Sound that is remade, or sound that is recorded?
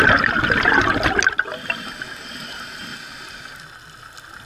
recorded